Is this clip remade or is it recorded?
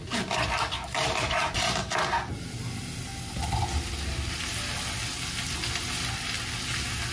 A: recorded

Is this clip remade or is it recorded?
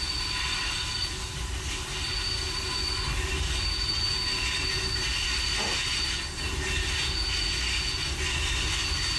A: recorded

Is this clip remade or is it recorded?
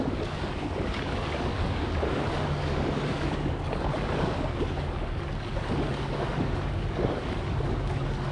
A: remade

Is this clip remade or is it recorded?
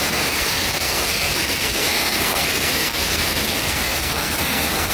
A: remade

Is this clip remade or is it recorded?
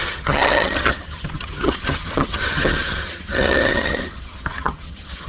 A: remade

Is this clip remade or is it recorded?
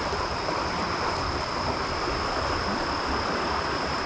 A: recorded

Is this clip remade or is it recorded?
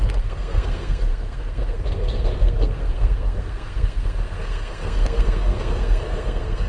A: remade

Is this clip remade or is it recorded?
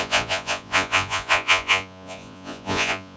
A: remade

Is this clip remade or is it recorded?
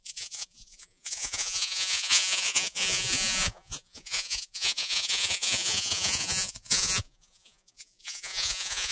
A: remade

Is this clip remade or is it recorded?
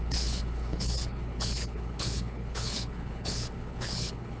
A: remade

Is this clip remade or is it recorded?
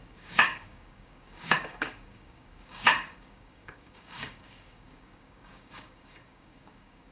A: remade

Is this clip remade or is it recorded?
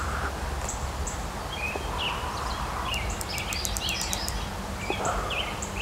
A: remade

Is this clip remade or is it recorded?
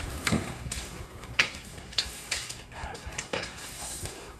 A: remade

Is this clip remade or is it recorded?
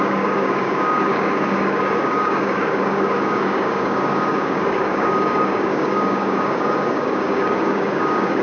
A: remade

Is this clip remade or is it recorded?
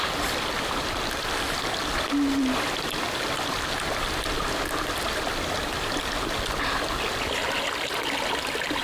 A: recorded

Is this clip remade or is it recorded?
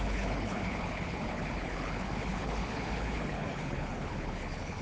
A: remade